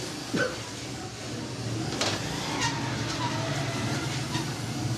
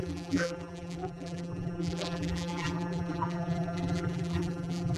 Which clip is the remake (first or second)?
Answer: second